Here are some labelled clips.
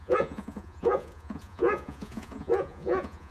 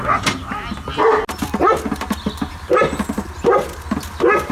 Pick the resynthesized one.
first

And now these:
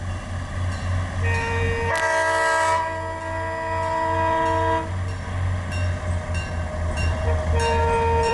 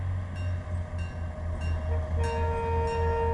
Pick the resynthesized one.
first